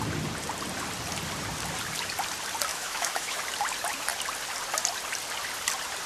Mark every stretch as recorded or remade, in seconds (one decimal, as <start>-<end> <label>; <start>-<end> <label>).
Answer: 0.0-2.7 recorded; 2.7-3.4 remade; 3.4-6.1 recorded

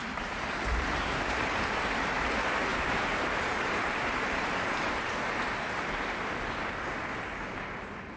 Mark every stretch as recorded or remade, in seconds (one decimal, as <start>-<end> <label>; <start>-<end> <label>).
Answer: 0.0-0.5 remade; 0.5-2.7 recorded; 2.7-5.1 remade; 5.1-8.2 recorded

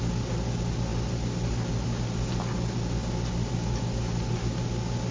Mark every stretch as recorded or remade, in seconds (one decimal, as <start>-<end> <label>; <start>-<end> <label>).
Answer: 0.0-5.1 recorded

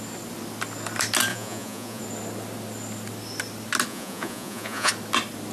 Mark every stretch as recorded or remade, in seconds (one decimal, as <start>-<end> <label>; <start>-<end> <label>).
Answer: 0.0-1.3 recorded; 1.3-2.0 remade; 2.0-3.9 recorded; 3.9-4.9 remade; 4.9-5.5 recorded